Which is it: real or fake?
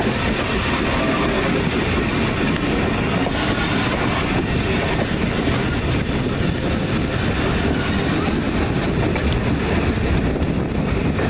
real